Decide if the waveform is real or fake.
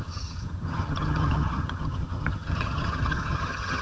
fake